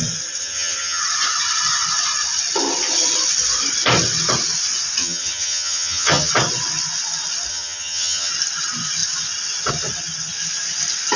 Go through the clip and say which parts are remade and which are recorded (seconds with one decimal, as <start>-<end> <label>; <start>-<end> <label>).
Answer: 0.0-0.4 recorded; 0.4-1.0 remade; 1.0-5.0 recorded; 5.0-6.3 remade; 6.3-7.5 recorded; 7.5-8.3 remade; 8.3-11.2 recorded